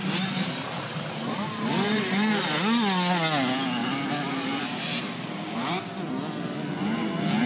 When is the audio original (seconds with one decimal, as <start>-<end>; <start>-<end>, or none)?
2.3-3.8; 6.1-7.5